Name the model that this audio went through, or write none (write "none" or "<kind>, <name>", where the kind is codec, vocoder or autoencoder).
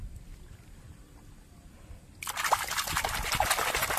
none